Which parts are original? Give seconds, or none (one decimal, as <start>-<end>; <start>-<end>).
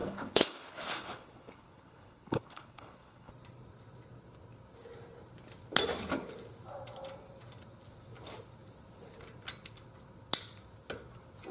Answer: 3.3-11.5